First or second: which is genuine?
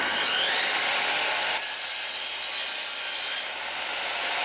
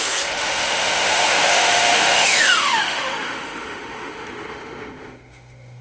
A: first